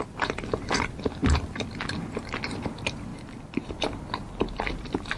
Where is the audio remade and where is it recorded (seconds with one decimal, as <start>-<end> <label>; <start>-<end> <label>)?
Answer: 0.0-3.1 remade; 3.1-3.7 recorded; 3.7-5.2 remade